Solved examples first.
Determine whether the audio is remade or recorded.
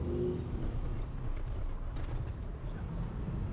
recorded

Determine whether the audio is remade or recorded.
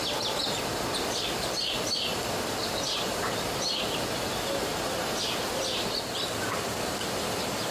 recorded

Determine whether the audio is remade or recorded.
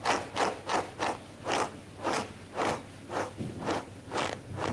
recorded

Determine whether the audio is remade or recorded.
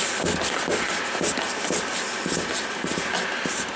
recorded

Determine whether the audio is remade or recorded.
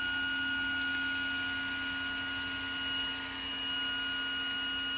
recorded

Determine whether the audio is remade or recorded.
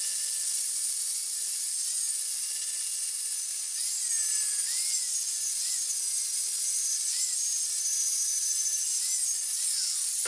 recorded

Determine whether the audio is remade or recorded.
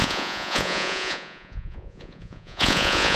remade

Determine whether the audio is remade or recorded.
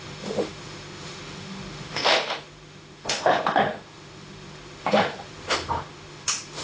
remade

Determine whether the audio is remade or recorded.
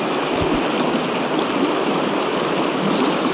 recorded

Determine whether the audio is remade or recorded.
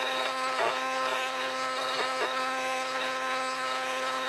remade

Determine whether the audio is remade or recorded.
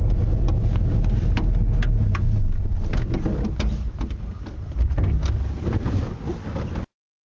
recorded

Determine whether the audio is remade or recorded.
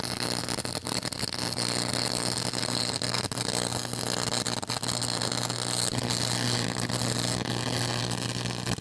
recorded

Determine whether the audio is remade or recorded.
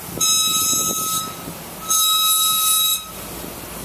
recorded